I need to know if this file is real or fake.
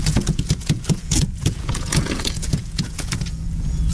fake